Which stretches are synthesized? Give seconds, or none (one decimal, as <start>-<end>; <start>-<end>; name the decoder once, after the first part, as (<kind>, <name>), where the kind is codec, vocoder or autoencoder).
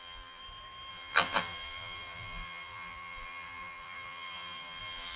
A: 0.0-0.4 (vocoder, BigVGAN v2); 0.9-5.2